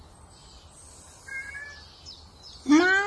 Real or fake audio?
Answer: real